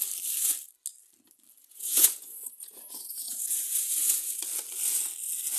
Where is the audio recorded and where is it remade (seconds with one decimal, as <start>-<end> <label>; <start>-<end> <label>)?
0.0-1.6 recorded; 1.6-4.4 remade; 4.4-5.6 recorded